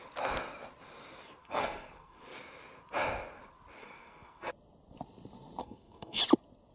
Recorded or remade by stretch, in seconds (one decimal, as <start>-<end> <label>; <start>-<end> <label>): 0.0-1.4 recorded; 1.4-2.2 remade; 2.2-3.8 recorded; 3.8-4.5 remade; 4.5-5.6 recorded; 5.6-6.2 remade; 6.2-6.7 recorded